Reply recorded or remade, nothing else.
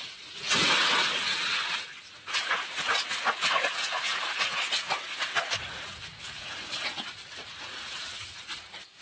remade